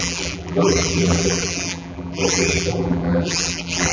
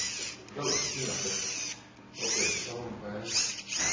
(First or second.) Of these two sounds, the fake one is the first